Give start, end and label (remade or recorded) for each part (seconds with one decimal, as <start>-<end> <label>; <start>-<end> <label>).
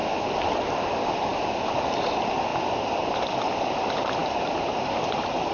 0.0-5.5 recorded